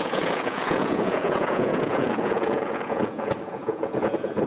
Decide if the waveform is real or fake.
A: fake